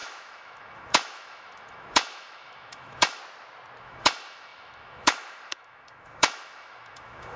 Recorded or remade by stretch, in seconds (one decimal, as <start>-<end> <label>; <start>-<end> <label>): 0.0-3.2 remade; 3.2-3.8 recorded; 3.8-7.4 remade

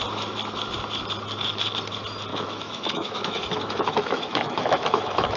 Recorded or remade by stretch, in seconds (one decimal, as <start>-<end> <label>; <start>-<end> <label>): 0.0-2.3 recorded; 2.3-5.4 remade